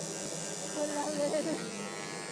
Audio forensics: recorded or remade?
recorded